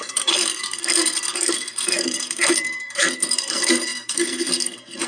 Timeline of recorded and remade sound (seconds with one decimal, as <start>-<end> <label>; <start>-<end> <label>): 0.0-5.1 remade